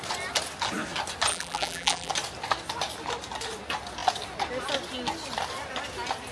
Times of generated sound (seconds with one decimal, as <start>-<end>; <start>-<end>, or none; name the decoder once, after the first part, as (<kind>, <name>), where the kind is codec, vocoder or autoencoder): 1.3-2.1 (vocoder, BigVGAN v2)